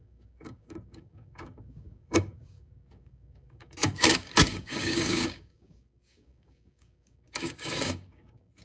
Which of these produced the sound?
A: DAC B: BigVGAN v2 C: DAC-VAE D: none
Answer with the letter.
A